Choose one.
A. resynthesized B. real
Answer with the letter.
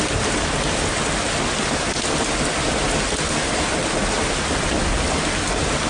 B